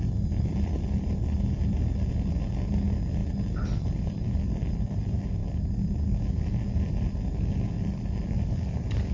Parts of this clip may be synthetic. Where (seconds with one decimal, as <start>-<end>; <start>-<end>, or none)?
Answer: none